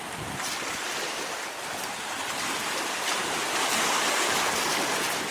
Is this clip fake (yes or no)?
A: no